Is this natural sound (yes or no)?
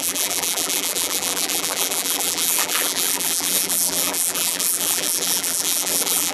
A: no